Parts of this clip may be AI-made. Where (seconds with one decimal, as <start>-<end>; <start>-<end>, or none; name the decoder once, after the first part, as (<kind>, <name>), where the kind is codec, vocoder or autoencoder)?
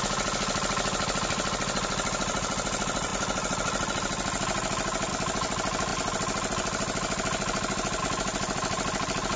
none